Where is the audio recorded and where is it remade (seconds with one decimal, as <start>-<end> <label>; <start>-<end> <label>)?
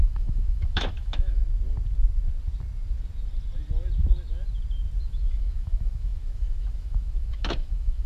0.0-1.4 remade; 1.4-5.0 recorded; 5.0-8.1 remade